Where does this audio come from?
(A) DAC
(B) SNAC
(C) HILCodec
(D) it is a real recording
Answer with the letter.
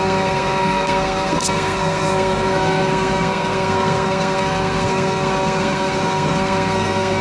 B